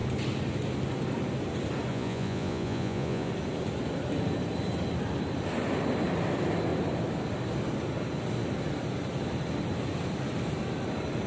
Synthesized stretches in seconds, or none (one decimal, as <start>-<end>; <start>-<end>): 1.9-3.3